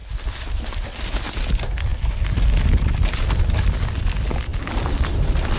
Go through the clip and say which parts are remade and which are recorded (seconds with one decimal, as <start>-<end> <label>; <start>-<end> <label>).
0.0-5.6 recorded